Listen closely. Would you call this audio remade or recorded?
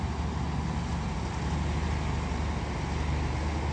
recorded